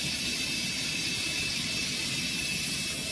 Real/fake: real